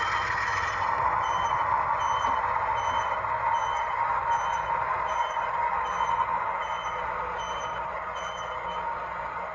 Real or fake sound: real